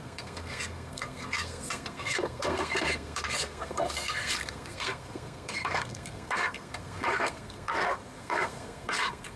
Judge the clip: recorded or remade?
remade